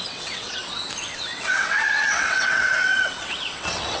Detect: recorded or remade remade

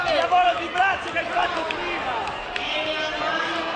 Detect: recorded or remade recorded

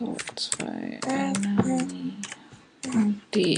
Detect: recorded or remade recorded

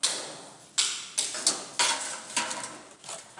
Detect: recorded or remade recorded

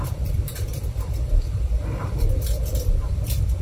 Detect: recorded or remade remade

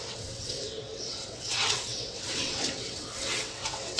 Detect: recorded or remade remade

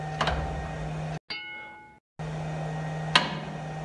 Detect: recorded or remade recorded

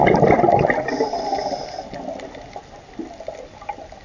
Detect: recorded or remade recorded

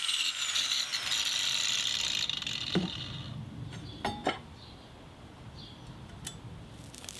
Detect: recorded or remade remade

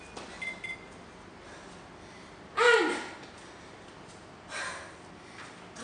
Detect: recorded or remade recorded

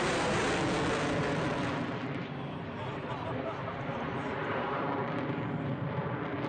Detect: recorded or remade remade